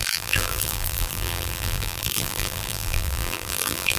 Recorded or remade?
remade